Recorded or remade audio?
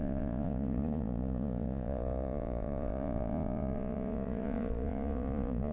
remade